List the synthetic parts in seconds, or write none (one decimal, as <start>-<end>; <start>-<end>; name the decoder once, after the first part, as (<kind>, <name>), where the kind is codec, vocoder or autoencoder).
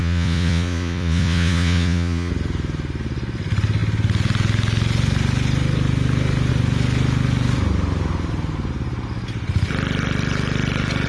0.0-2.3 (vocoder, Vocos)